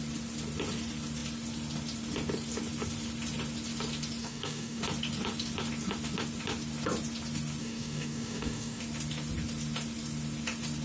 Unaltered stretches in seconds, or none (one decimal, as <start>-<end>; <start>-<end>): 0.0-4.2; 4.8-7.6; 8.8-10.8